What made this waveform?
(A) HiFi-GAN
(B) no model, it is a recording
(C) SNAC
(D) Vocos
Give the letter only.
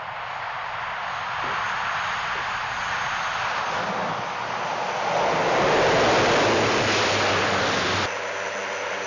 B